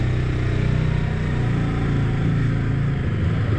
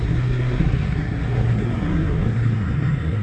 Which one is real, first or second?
first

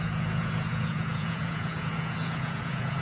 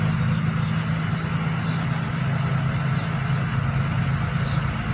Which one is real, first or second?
second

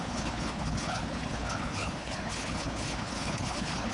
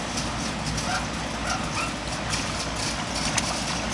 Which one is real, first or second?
second